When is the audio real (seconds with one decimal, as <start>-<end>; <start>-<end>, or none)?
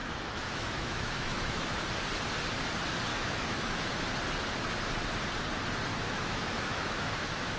1.8-3.1; 4.1-5.9